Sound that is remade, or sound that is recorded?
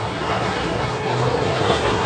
remade